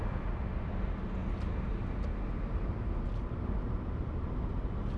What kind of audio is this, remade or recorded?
recorded